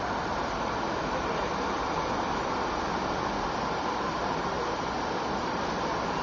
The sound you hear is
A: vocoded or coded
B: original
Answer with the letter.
A